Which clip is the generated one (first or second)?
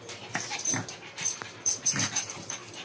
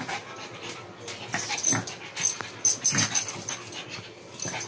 first